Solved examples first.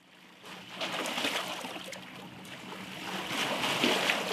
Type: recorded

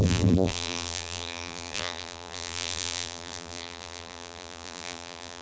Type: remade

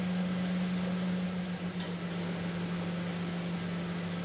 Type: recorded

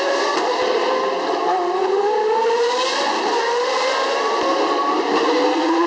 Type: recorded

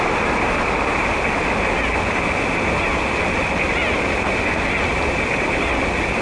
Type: recorded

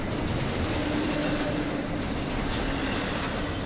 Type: recorded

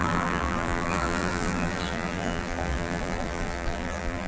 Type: remade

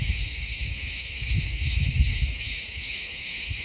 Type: remade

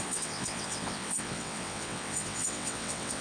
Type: remade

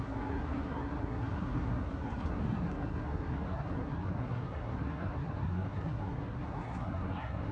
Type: remade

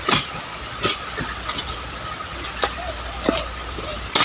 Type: recorded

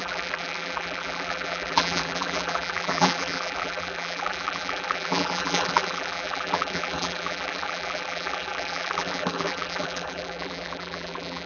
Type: remade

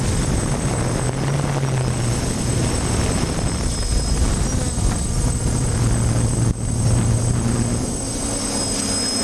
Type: recorded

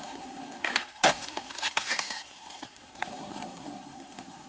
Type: remade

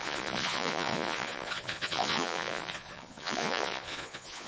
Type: remade